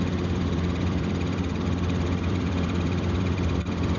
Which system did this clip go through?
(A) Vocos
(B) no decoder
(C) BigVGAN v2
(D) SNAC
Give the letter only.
C